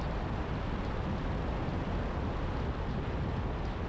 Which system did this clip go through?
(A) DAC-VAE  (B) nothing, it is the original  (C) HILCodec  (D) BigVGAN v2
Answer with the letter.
B